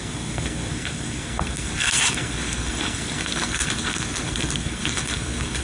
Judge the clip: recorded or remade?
remade